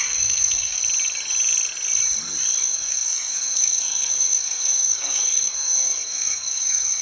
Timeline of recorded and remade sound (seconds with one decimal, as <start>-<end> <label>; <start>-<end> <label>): 0.0-0.8 remade; 0.8-2.6 recorded; 2.6-7.0 remade